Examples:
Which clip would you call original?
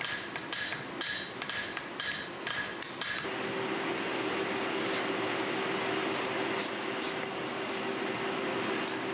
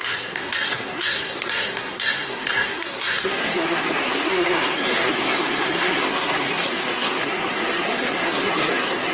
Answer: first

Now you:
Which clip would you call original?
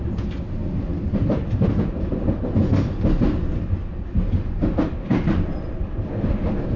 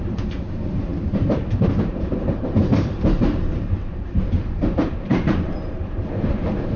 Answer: first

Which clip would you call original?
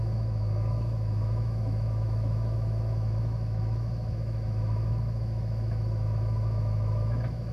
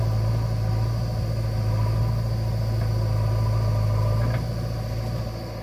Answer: second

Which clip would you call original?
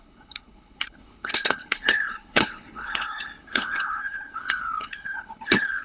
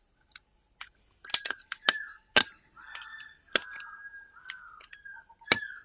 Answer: second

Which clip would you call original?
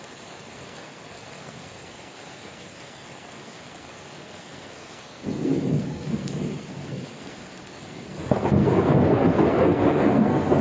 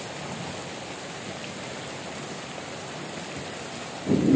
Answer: second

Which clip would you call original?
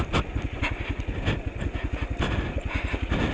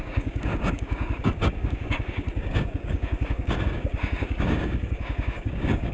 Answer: first